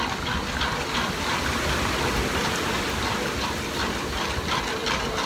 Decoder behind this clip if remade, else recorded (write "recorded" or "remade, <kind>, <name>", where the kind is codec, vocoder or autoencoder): recorded